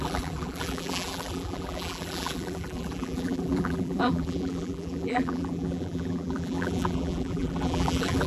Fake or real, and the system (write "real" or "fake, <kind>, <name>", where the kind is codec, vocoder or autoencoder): fake, vocoder, BigVGAN v2